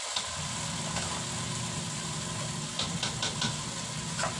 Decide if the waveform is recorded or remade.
recorded